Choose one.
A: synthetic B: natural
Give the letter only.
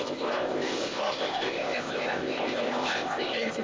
A